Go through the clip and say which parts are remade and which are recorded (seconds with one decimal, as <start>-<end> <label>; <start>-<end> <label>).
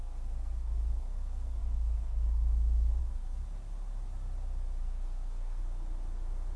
0.0-3.4 remade; 3.4-4.8 recorded; 4.8-5.6 remade; 5.6-6.6 recorded